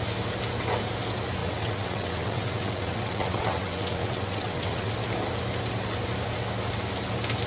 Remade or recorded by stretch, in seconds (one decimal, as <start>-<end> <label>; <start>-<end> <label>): 0.0-1.4 recorded; 1.4-4.9 remade; 4.9-7.5 recorded